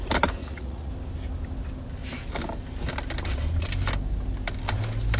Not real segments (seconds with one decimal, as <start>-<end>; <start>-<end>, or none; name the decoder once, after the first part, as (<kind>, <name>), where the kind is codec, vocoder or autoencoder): 0.4-0.9 (vocoder, Vocos)